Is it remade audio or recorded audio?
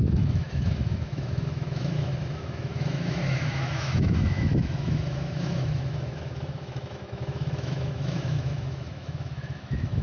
remade